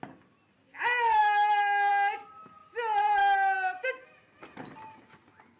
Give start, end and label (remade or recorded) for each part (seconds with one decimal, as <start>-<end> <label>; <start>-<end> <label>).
0.0-1.2 recorded; 1.2-1.9 remade; 1.9-5.6 recorded